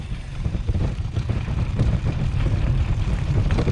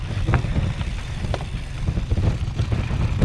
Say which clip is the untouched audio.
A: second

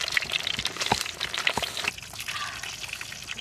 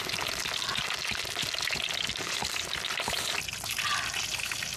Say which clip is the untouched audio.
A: second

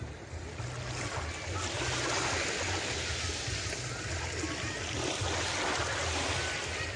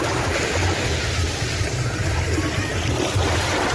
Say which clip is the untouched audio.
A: first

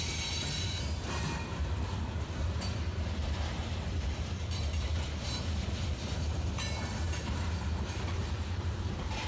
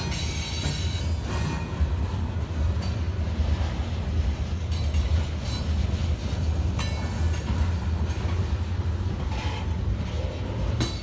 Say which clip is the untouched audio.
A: second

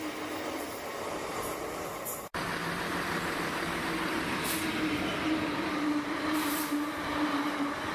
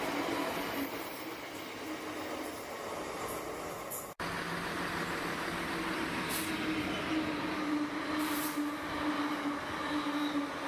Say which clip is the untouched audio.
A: second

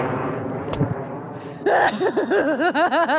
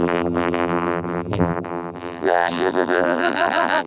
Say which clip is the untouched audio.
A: first